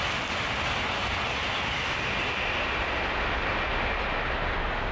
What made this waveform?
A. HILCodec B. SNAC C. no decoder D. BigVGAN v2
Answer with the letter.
C